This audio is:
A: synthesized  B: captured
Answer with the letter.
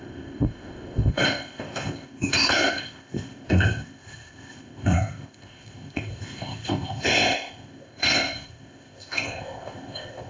A